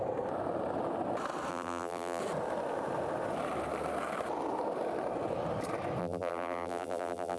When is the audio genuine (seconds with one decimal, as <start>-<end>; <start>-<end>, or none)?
0.0-1.5; 2.2-6.0